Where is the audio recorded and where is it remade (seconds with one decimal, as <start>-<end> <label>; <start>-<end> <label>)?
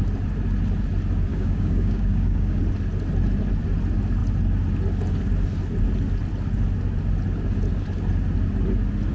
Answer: 0.0-1.3 recorded; 1.3-2.6 remade; 2.6-9.1 recorded